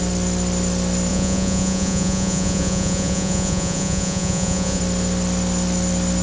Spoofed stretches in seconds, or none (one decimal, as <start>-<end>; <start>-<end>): 1.1-4.8